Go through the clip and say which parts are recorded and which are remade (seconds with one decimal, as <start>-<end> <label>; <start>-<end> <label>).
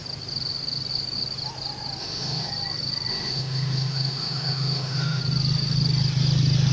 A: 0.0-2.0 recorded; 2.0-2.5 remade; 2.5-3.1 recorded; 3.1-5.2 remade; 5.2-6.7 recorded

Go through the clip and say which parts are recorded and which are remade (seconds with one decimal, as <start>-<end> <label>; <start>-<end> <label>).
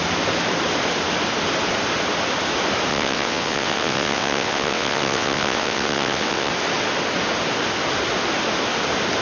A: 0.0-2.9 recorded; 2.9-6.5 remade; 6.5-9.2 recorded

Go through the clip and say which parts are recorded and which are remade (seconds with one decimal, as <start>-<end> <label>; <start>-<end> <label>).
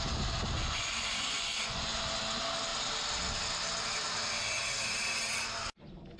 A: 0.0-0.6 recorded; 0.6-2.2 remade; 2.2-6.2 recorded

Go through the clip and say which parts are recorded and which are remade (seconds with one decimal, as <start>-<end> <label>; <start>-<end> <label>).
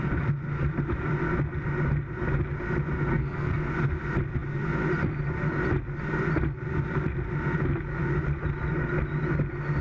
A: 0.0-3.1 recorded; 3.1-3.7 remade; 3.7-9.8 recorded